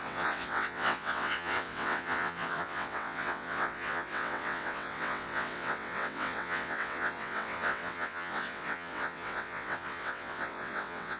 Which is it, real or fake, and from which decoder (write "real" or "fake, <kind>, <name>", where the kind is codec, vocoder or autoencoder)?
fake, vocoder, WaveNeXt